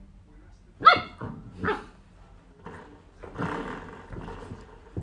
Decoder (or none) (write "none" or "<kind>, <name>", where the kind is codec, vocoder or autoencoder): none